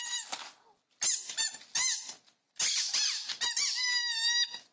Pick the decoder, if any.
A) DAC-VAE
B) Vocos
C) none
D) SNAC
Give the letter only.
C